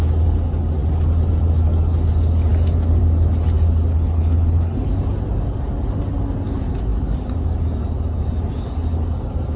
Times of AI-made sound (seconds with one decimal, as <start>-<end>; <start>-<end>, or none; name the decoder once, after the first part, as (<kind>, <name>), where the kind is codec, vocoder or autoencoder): 3.9-4.9 (codec, HILCodec)